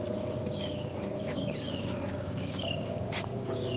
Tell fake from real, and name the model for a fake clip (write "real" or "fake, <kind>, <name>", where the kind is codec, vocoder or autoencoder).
fake, codec, DAC